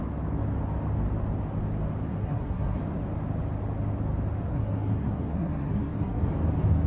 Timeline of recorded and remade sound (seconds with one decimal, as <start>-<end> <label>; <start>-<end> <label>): 0.0-2.1 recorded; 2.1-2.8 remade; 2.8-4.5 recorded; 4.5-6.3 remade; 6.3-6.9 recorded